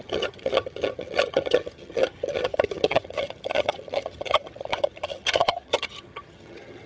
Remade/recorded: remade